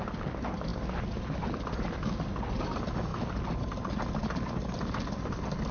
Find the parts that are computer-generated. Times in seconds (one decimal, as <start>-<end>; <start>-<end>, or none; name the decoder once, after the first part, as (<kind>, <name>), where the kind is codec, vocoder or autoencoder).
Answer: none